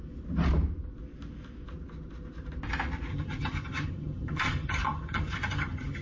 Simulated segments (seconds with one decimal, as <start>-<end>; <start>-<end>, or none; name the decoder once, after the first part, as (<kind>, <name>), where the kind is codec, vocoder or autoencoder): 3.1-6.0 (vocoder, HiFi-GAN)